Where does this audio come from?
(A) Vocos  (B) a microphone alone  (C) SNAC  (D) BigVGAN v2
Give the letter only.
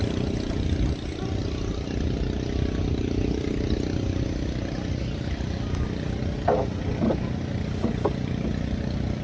B